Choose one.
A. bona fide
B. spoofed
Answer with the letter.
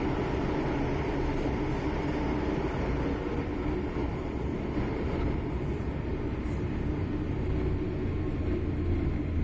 A